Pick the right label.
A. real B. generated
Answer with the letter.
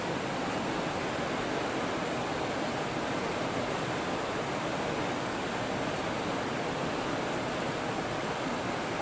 A